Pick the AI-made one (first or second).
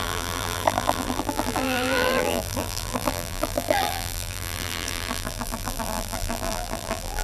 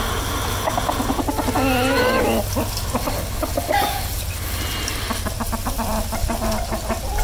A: first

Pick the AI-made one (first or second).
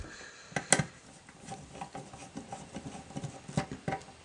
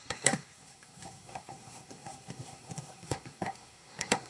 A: second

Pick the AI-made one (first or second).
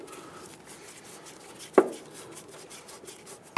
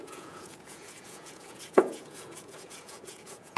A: second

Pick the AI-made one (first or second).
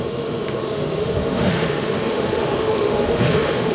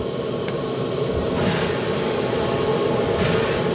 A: first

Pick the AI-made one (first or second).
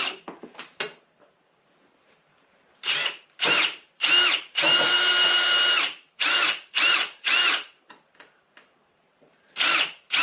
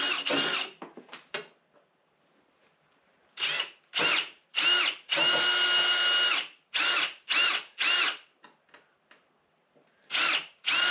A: first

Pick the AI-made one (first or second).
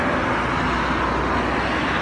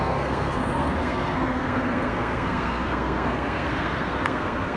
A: second